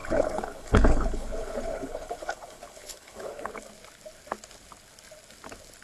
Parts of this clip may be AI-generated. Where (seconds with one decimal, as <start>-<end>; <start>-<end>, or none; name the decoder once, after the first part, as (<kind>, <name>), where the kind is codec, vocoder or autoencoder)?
0.0-3.5 (codec, HILCodec)